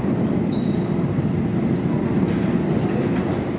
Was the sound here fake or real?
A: real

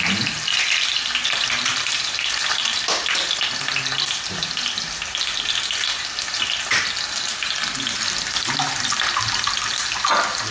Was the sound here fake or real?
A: real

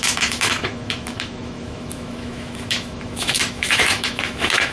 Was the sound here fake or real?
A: fake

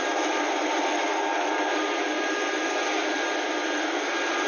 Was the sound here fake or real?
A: real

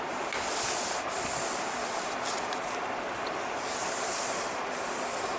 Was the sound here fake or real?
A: real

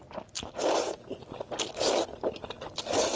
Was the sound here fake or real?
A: real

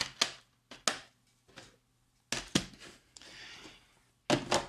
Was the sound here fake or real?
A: real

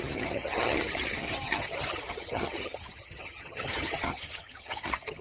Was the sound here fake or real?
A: fake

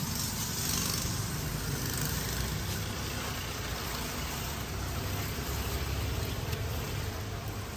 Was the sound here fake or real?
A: real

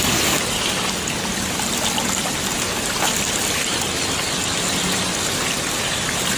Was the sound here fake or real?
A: real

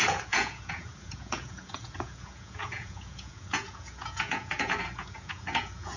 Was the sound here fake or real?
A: fake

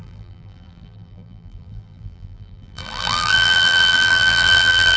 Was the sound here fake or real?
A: fake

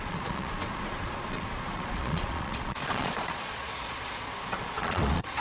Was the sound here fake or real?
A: fake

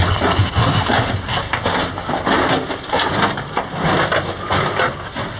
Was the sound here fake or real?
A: real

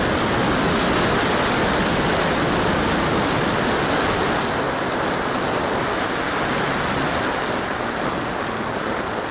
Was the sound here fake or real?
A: real